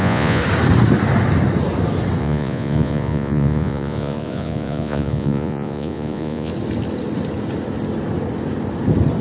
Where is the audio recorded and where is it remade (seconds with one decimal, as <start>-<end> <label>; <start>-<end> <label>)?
0.0-0.4 remade; 0.4-2.2 recorded; 2.2-6.5 remade; 6.5-9.2 recorded